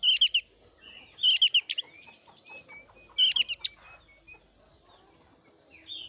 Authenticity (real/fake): real